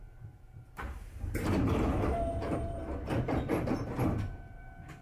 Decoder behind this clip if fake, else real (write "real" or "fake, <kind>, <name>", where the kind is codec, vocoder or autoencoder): fake, vocoder, BigVGAN v2